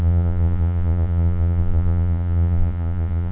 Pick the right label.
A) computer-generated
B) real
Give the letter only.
A